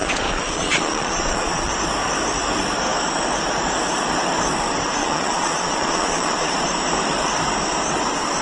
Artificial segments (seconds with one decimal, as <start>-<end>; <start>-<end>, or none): 0.0-1.7; 5.0-6.5

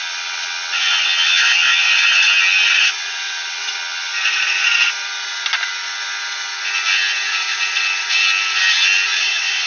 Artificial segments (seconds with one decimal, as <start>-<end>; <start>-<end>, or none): 0.0-1.9; 2.8-4.1; 9.2-9.7